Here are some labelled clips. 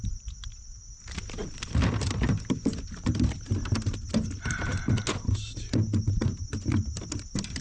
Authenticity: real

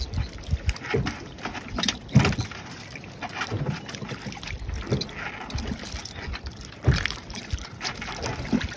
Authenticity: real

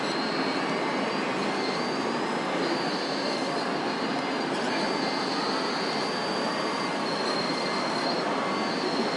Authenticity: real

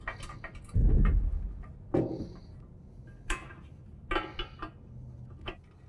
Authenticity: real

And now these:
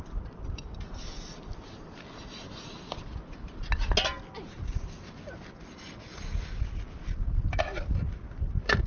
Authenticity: real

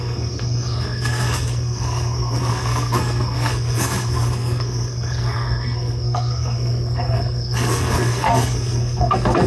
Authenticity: fake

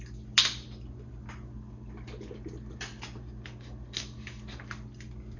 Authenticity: real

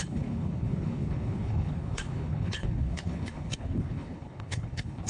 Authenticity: fake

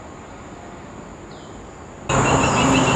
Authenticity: real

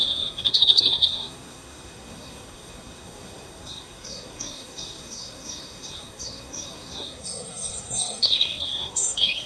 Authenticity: fake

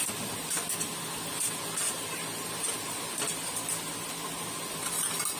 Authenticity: real